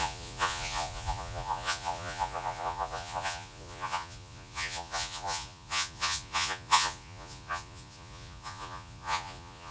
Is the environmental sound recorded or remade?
remade